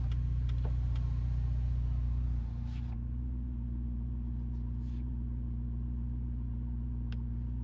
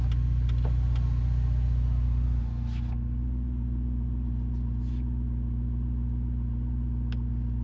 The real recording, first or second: second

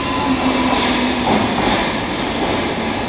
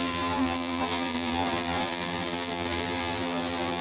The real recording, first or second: first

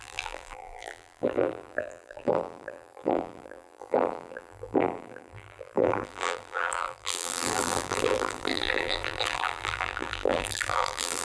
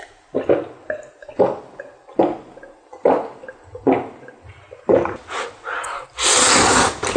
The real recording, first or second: second